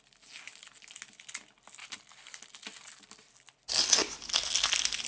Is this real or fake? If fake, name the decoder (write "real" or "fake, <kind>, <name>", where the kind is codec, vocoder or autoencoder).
real